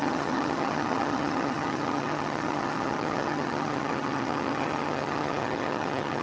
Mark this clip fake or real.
fake